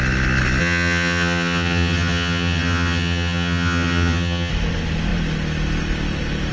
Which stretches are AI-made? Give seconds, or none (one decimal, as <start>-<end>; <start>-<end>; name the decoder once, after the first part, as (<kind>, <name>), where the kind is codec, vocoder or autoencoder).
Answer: 0.6-4.5 (vocoder, HiFi-GAN)